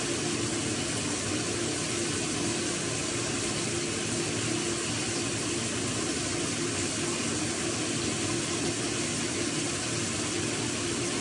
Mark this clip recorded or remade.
recorded